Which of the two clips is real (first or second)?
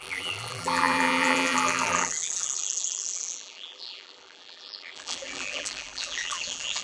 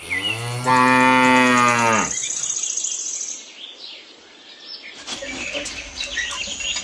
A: second